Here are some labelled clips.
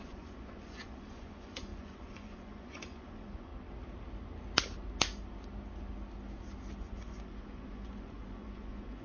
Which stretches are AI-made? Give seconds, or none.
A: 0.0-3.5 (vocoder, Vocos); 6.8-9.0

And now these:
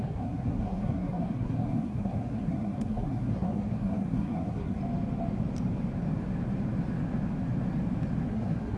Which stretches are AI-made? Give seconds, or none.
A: 0.0-4.8 (codec, SNAC); 8.3-8.8

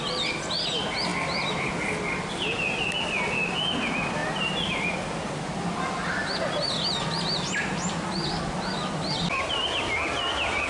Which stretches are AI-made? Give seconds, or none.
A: none

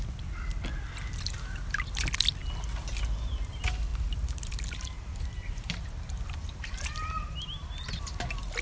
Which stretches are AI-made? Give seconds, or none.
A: 3.9-7.9 (vocoder, BigVGAN v2)

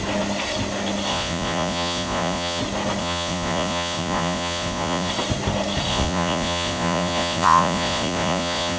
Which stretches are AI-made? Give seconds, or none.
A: 1.1-2.6 (vocoder, Vocos); 3.0-5.1; 5.9-8.8

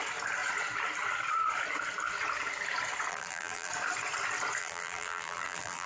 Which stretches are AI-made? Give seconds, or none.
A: 3.1-3.7 (vocoder, BigVGAN v2); 4.6-5.9

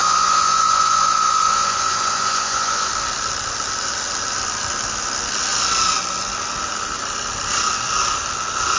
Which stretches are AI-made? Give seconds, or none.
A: 0.0-2.9 (vocoder, Vocos)